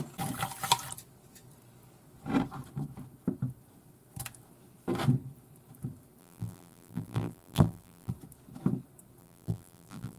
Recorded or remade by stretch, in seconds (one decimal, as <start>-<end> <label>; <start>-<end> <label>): 0.0-6.2 recorded; 6.2-8.1 remade; 8.1-9.2 recorded; 9.2-10.2 remade